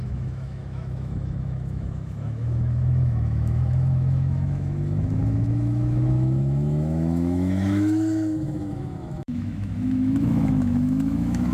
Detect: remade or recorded remade